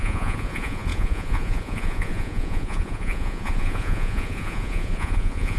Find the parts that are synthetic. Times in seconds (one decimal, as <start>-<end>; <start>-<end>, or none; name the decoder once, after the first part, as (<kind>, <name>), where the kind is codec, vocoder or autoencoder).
0.0-5.6 (vocoder, Vocos)